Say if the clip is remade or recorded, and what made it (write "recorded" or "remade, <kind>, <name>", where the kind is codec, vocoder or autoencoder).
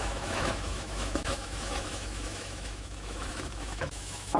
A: remade, autoencoder, DAC-VAE